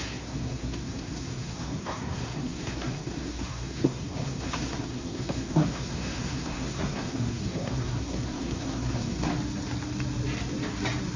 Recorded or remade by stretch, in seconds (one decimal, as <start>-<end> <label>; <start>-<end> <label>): 0.0-9.3 remade; 9.3-11.2 recorded